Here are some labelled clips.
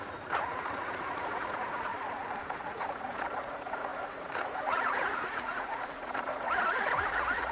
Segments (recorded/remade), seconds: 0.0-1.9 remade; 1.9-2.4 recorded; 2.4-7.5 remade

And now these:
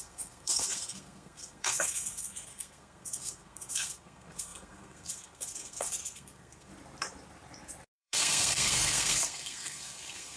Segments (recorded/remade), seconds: 0.0-6.7 remade; 6.7-7.9 recorded; 7.9-10.4 remade

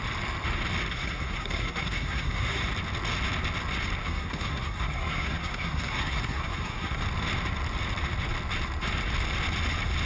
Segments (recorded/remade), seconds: 0.0-0.9 recorded; 0.9-2.6 remade; 2.6-4.0 recorded; 4.0-7.0 remade; 7.0-10.1 recorded

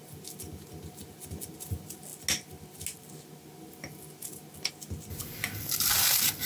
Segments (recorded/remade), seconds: 0.0-6.5 recorded

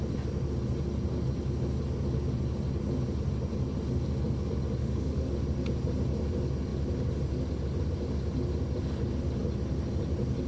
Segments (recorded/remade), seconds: 0.0-4.8 recorded; 4.8-5.3 remade; 5.3-10.5 recorded

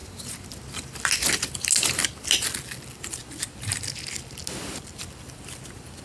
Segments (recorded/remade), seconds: 0.0-3.0 recorded; 3.0-6.0 remade

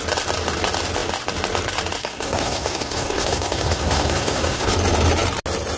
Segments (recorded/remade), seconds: 0.0-2.0 recorded; 2.0-4.7 remade; 4.7-5.8 recorded

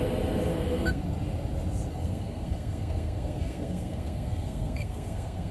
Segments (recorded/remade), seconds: 0.0-0.5 recorded; 0.5-1.0 remade; 1.0-1.9 recorded; 1.9-5.5 remade